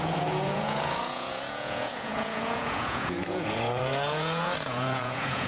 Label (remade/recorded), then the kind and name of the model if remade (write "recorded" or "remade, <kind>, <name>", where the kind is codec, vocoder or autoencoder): remade, vocoder, Vocos